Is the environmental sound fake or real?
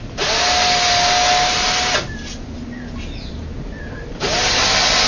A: real